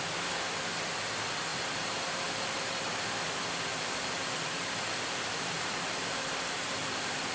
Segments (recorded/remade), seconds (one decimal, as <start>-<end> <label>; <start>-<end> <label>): 0.0-1.5 recorded; 1.5-3.1 remade; 3.1-3.7 recorded; 3.7-7.3 remade